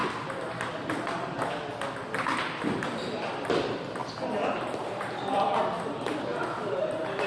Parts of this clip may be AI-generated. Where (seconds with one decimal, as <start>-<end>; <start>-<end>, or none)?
2.5-4.0; 5.3-6.3; 6.8-7.3